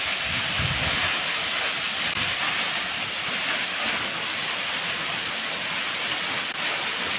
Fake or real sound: fake